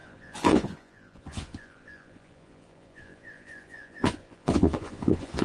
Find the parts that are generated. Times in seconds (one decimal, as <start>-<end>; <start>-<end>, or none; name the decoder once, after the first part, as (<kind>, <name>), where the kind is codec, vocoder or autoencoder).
0.0-5.4 (vocoder, Vocos)